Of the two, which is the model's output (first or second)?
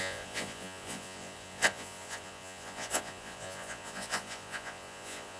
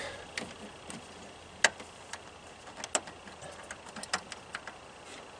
first